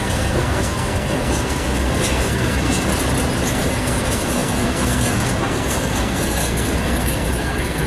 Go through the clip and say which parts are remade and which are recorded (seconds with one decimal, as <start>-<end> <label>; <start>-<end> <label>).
0.0-2.9 remade; 2.9-3.5 recorded; 3.5-7.9 remade